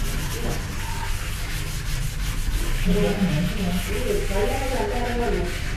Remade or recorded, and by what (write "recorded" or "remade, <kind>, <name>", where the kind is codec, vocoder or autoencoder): recorded